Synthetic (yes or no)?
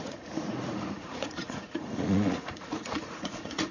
yes